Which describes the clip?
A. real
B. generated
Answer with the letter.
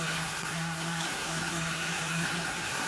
B